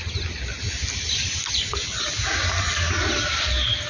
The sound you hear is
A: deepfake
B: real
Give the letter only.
B